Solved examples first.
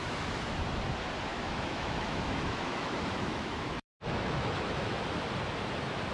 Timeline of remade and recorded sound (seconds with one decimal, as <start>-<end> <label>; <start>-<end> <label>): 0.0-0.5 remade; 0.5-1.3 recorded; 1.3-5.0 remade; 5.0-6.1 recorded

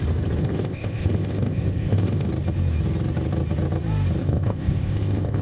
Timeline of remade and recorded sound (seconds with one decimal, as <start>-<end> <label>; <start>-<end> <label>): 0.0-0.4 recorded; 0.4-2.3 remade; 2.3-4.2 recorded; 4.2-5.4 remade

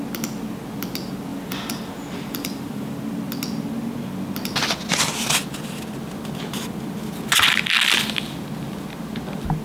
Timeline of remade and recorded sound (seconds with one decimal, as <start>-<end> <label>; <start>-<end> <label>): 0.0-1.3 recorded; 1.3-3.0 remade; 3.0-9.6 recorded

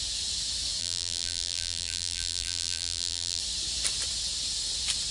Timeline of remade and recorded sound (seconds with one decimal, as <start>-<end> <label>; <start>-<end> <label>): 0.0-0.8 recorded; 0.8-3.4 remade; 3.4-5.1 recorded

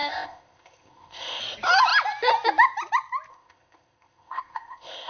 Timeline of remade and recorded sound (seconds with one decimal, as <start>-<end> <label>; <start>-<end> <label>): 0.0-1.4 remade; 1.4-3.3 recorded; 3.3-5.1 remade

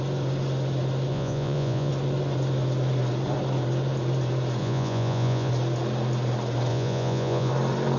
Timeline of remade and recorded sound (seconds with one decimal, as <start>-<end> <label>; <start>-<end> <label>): 0.0-1.1 recorded; 1.1-1.9 remade; 1.9-4.6 recorded; 4.6-5.5 remade; 5.5-6.7 recorded; 6.7-7.5 remade; 7.5-8.0 recorded

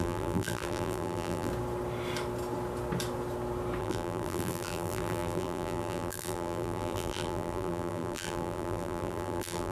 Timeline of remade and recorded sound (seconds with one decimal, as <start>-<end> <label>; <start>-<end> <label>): 0.0-1.5 remade; 1.5-3.8 recorded; 3.8-9.7 remade